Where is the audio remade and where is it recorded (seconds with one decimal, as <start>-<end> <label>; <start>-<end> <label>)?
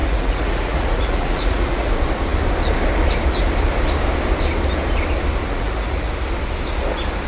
0.0-1.9 remade; 1.9-5.4 recorded; 5.4-6.1 remade; 6.1-7.3 recorded